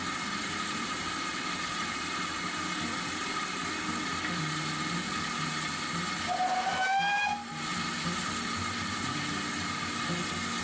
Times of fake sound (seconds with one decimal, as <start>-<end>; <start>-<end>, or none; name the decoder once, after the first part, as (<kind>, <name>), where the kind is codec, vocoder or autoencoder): none